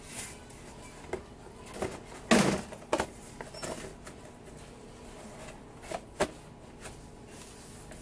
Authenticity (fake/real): real